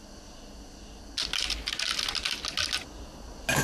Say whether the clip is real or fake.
real